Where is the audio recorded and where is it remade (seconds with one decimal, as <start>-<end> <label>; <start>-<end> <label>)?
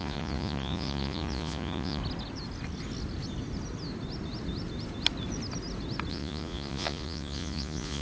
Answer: 0.0-2.0 remade; 2.0-6.1 recorded; 6.1-8.0 remade